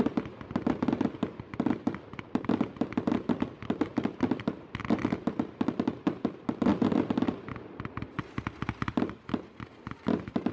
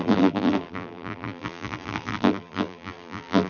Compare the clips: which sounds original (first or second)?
first